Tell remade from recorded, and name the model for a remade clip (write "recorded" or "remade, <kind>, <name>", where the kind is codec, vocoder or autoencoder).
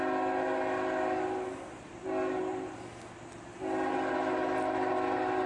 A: recorded